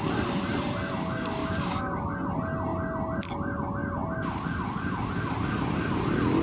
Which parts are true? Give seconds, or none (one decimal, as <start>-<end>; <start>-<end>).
0.0-1.4; 1.9-6.4